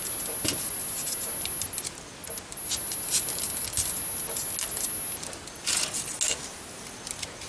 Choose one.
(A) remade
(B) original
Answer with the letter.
B